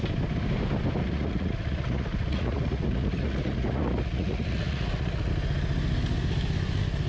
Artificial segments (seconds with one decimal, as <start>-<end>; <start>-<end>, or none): 1.0-5.3